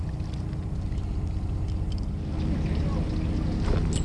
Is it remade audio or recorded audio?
recorded